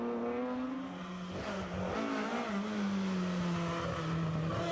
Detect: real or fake real